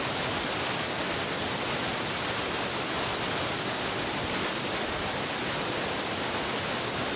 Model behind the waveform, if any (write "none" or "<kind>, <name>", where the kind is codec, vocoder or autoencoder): none